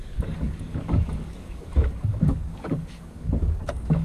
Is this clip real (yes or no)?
no